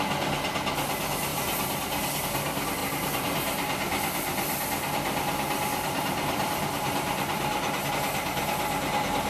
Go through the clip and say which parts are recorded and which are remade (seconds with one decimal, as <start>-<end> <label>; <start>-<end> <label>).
0.0-1.3 recorded; 1.3-2.2 remade; 2.2-2.8 recorded; 2.8-7.9 remade; 7.9-9.3 recorded